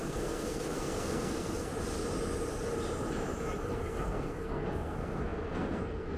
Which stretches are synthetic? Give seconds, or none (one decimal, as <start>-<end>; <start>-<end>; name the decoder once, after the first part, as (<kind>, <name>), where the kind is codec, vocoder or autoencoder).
0.0-1.7 (codec, SNAC); 3.7-6.2